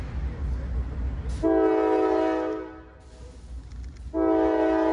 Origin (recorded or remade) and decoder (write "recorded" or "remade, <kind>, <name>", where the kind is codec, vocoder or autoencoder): recorded